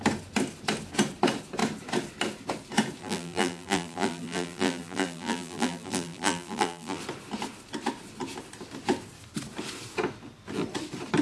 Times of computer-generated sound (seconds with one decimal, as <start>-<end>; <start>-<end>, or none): 3.0-7.0